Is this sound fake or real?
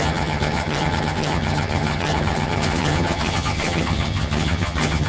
fake